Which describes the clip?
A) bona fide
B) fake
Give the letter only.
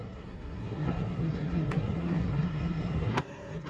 B